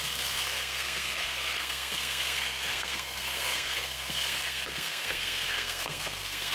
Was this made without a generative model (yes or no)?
no